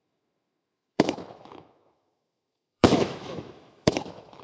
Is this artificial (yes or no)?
yes